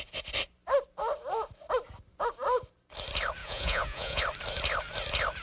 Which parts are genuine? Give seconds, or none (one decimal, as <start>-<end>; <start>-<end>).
0.0-3.4; 4.2-5.4